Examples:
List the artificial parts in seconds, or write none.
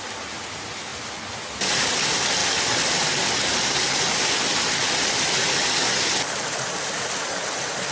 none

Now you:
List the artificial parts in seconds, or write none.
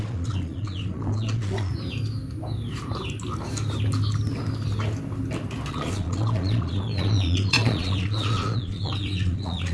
0.0-1.7 (vocoder, Vocos); 5.7-9.7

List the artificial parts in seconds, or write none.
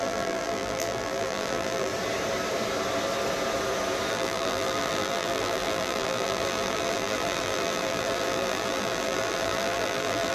0.0-1.9 (vocoder, BigVGAN v2); 4.1-10.3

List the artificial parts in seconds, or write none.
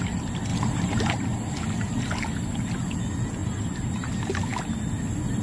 0.5-1.1 (vocoder, BigVGAN v2); 3.4-4.1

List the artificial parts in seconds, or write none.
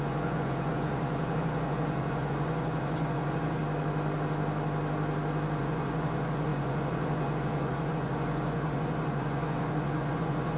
0.0-3.6 (vocoder, Vocos); 5.6-10.6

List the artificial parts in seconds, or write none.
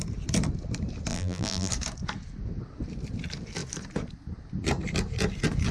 1.1-1.7 (vocoder, BigVGAN v2)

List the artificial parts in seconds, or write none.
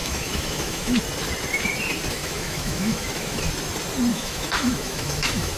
0.0-1.0 (autoencoder, DAC-VAE); 2.2-3.5; 4.1-5.6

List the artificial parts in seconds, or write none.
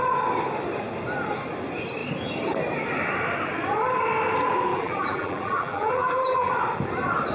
4.7-6.5 (vocoder, BigVGAN v2)